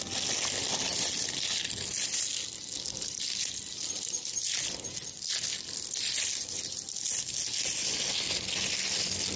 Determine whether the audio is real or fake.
real